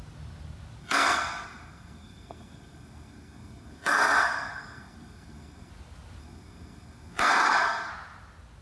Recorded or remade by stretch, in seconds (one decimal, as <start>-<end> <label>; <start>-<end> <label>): 0.0-0.8 recorded; 0.8-5.7 remade; 5.7-6.2 recorded; 6.2-7.9 remade; 7.9-8.6 recorded